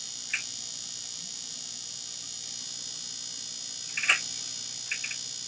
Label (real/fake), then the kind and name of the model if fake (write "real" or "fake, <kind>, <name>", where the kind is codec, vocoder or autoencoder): real